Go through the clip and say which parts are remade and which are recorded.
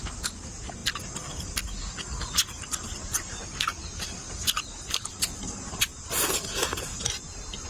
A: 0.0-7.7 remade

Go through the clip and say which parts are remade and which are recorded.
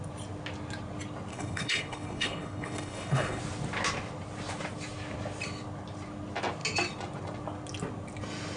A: 0.0-1.3 recorded; 1.3-3.4 remade; 3.4-8.6 recorded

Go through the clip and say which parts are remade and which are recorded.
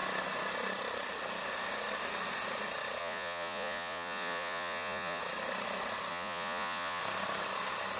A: 0.0-3.0 recorded; 3.0-5.2 remade; 5.2-6.1 recorded; 6.1-7.0 remade; 7.0-8.0 recorded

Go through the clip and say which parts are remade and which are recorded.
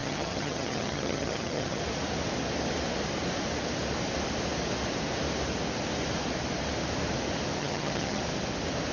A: 0.0-1.8 remade; 1.8-7.6 recorded; 7.6-8.2 remade; 8.2-8.9 recorded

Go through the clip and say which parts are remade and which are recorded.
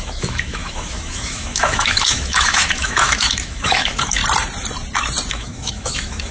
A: 0.0-4.2 remade; 4.2-5.3 recorded; 5.3-6.3 remade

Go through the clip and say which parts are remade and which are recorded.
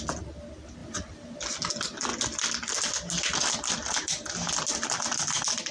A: 0.0-5.7 recorded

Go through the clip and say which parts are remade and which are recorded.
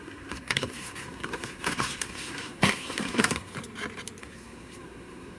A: 0.0-3.5 remade; 3.5-4.2 recorded; 4.2-5.4 remade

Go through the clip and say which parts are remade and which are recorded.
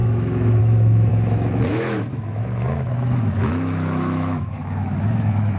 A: 0.0-5.6 remade